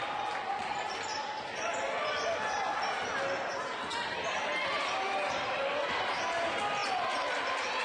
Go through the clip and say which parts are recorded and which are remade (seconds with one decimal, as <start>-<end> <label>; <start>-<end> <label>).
0.0-7.8 recorded